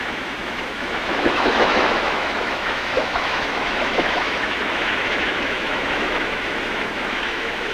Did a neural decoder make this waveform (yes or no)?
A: yes